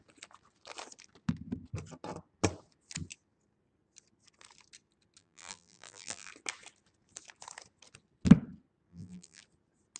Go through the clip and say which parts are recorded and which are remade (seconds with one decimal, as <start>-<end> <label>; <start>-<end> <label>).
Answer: 0.0-5.2 recorded; 5.2-6.3 remade; 6.3-8.9 recorded; 8.9-9.4 remade; 9.4-10.0 recorded